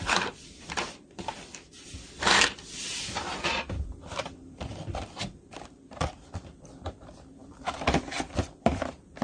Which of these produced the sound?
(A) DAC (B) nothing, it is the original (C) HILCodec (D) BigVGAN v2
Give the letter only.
D